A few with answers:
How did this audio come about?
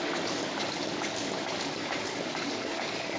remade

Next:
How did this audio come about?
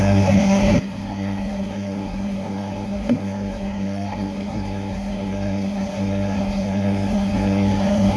remade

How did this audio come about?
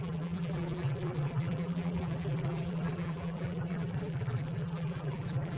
remade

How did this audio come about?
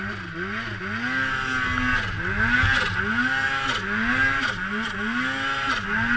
recorded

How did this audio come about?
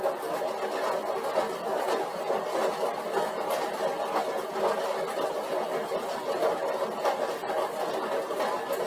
recorded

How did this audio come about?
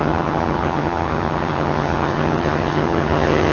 remade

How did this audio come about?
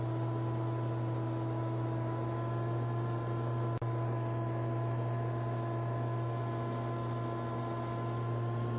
recorded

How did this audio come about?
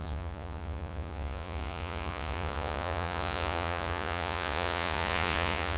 remade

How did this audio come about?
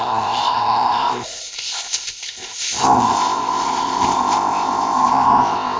remade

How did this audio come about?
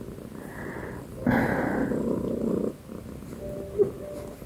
recorded